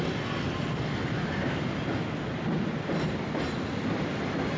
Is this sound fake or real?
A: real